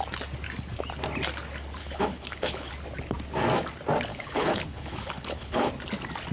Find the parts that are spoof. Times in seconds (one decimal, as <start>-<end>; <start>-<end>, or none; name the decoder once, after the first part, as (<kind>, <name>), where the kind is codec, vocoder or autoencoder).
1.8-2.7 (codec, HILCodec); 4.1-5.7